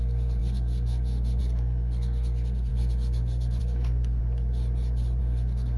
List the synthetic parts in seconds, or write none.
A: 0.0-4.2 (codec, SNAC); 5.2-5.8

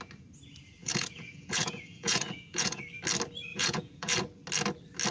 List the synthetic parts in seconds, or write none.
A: 0.8-2.8 (vocoder, Vocos); 3.5-4.2